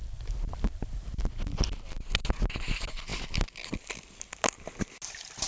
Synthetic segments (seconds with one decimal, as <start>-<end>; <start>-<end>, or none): none

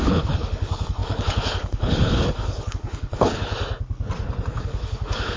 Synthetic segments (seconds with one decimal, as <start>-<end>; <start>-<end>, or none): 0.0-3.5; 4.5-5.4

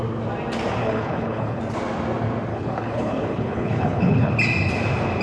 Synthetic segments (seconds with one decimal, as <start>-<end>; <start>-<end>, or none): 0.8-1.6; 2.5-4.3